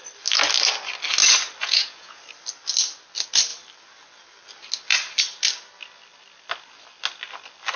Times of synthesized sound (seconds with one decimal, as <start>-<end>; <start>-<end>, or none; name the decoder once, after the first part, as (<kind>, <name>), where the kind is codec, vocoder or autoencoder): 1.6-2.2 (vocoder, Vocos)